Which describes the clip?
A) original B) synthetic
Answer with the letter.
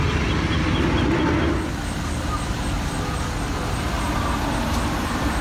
A